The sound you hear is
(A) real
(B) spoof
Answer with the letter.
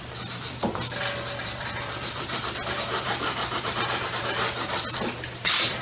B